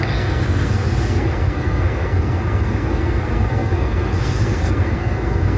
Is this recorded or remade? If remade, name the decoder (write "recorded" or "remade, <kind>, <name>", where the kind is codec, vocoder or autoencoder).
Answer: remade, codec, SNAC